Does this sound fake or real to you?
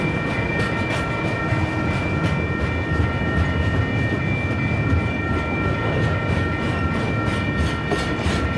real